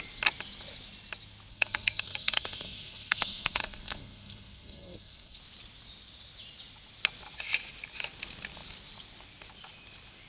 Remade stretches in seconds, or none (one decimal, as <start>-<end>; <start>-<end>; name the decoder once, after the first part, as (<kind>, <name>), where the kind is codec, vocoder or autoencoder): 1.5-5.4 (codec, SNAC)